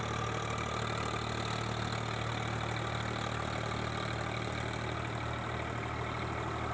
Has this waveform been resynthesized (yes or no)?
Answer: no